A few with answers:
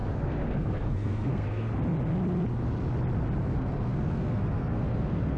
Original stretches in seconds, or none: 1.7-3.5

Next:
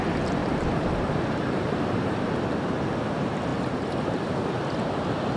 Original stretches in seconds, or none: 0.0-0.4; 2.5-3.5; 4.2-5.4